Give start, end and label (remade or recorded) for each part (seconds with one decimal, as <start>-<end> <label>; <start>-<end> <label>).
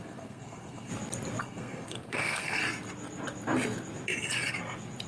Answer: 0.0-0.9 remade; 0.9-1.4 recorded; 1.4-2.6 remade; 2.6-5.1 recorded